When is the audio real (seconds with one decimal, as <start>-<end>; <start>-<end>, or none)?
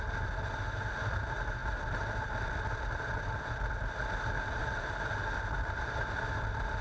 0.0-6.8